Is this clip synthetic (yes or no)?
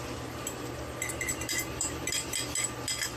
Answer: no